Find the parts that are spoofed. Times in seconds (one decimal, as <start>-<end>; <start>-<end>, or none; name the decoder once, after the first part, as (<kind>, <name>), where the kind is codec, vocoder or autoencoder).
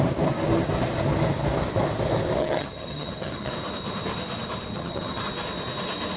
2.4-3.5 (vocoder, HiFi-GAN); 4.7-5.2